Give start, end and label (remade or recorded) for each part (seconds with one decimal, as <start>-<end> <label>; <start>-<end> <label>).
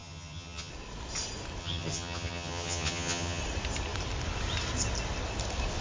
0.0-0.7 remade; 0.7-1.6 recorded; 1.6-3.4 remade; 3.4-5.8 recorded